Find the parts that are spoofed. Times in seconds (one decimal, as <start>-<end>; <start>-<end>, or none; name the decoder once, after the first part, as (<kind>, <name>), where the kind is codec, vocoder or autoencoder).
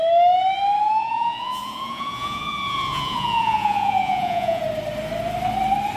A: 1.0-4.6 (vocoder, Vocos)